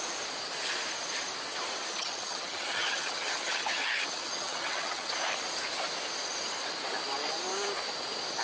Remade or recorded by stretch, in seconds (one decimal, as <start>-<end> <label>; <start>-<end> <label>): 0.0-1.9 recorded; 1.9-5.1 remade; 5.1-8.4 recorded